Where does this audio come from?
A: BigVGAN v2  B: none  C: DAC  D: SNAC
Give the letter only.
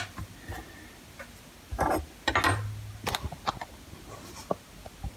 B